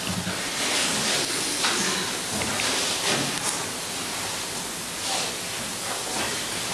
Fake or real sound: real